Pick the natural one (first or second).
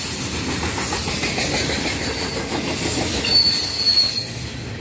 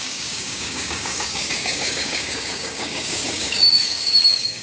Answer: first